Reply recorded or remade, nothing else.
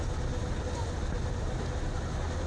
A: recorded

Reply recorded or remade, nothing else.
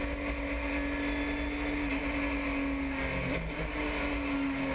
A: recorded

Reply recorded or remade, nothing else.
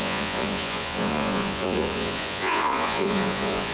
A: remade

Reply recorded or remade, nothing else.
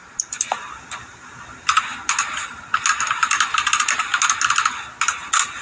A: recorded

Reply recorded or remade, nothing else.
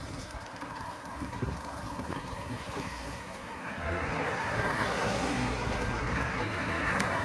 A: remade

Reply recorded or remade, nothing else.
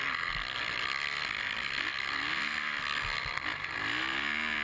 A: recorded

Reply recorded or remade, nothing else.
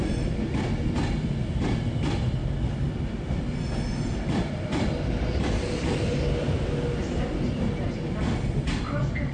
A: recorded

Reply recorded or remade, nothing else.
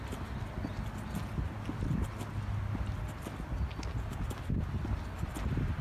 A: recorded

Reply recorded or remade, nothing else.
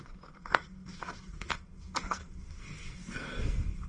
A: remade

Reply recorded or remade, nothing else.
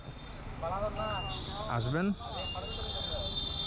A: recorded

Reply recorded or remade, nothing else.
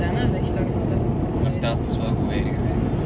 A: recorded